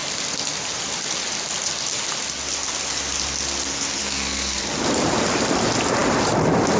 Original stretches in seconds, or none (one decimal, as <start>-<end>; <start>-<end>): 0.0-4.0; 4.6-6.8